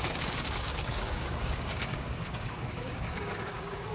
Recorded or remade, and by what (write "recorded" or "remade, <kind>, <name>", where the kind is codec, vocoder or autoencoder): remade, codec, DAC